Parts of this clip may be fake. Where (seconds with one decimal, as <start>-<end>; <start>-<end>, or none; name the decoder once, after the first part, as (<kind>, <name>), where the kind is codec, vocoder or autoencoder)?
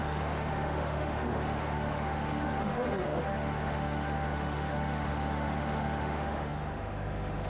0.0-7.5 (autoencoder, DAC-VAE)